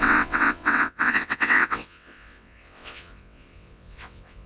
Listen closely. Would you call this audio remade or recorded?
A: remade